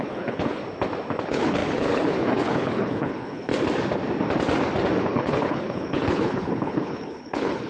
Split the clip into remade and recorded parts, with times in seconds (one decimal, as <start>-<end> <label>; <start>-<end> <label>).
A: 0.0-0.6 remade; 0.6-1.2 recorded; 1.2-3.5 remade; 3.5-5.0 recorded; 5.0-7.7 remade